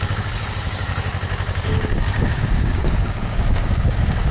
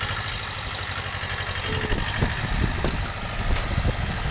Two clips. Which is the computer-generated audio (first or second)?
first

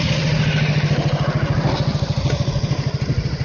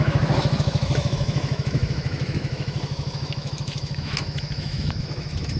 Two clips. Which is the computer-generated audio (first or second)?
second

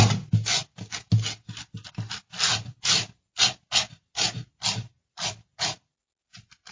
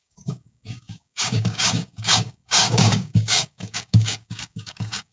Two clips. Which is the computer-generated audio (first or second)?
second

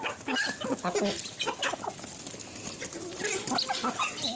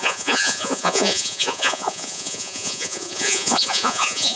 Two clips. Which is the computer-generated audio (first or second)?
second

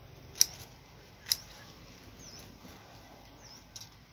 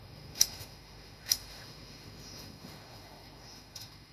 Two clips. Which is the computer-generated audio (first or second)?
second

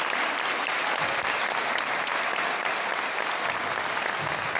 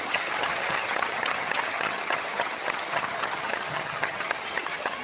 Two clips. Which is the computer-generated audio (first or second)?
second